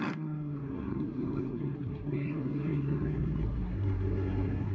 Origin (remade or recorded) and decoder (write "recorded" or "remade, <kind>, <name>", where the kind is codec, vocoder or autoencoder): remade, codec, SNAC